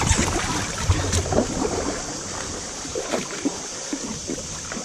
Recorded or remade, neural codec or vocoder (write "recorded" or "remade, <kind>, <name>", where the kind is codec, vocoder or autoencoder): recorded